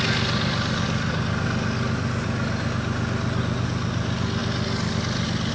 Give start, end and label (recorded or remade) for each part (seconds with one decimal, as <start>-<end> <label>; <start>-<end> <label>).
0.0-5.5 recorded